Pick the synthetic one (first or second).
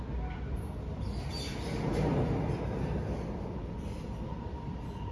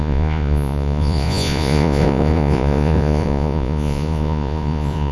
second